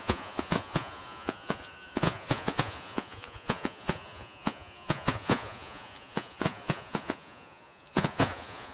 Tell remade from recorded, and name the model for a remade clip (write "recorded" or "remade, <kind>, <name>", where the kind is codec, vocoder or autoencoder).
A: remade, vocoder, Vocos